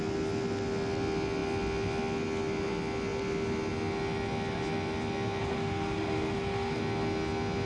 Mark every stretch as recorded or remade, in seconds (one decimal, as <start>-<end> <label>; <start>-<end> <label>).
0.0-5.4 recorded; 5.4-6.8 remade; 6.8-7.7 recorded